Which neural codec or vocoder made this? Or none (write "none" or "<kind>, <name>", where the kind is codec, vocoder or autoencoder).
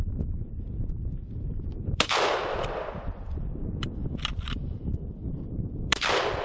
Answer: vocoder, BigVGAN v2